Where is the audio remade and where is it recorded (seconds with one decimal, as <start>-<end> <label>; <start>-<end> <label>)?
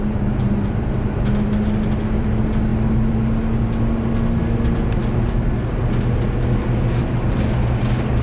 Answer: 0.0-8.2 recorded